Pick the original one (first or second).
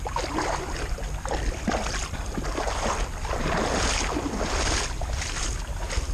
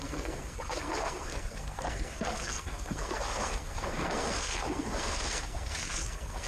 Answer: first